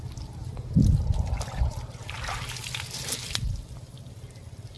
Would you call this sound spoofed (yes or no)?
no